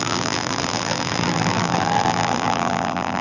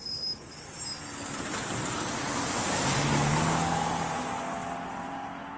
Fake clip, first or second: first